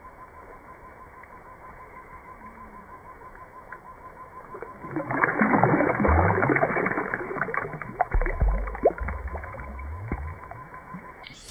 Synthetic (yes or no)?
yes